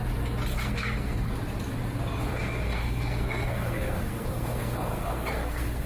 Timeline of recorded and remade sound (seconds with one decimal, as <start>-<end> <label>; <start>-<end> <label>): 0.0-0.5 recorded; 0.5-1.3 remade; 1.3-2.3 recorded; 2.3-5.9 remade